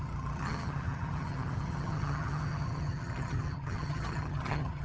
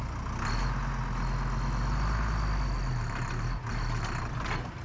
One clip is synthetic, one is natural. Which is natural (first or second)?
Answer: second